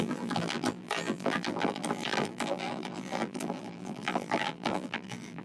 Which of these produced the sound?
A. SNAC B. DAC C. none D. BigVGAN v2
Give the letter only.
D